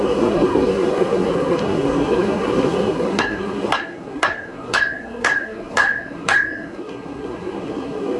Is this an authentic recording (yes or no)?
no